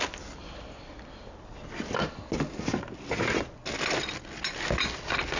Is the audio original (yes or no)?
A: yes